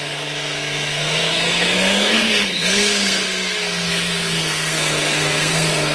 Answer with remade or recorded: remade